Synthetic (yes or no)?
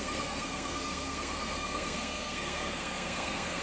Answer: yes